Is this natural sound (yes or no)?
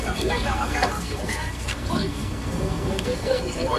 no